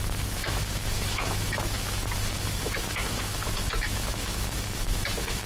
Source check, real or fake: fake